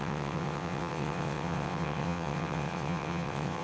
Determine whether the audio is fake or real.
fake